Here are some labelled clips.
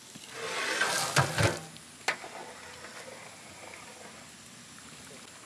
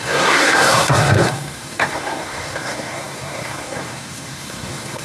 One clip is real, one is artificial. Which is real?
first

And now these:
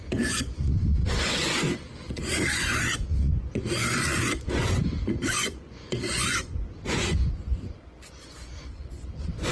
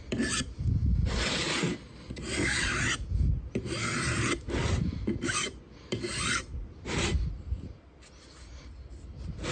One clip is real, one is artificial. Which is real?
second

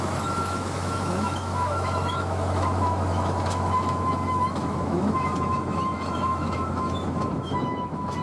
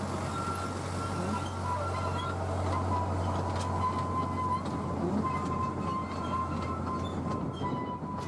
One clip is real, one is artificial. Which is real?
second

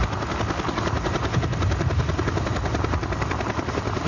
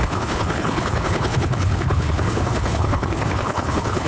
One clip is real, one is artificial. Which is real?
first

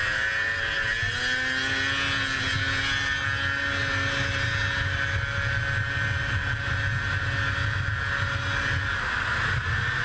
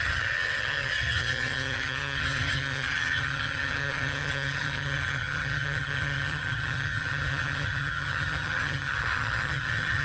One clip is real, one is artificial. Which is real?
first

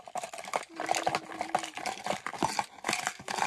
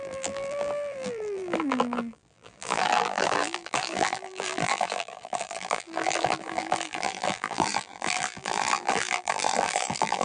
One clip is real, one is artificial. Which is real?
first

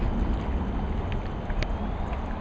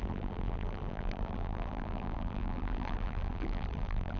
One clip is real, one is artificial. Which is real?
first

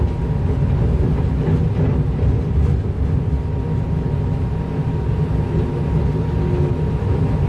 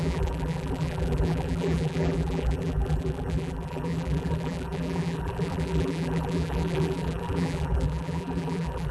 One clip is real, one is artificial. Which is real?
first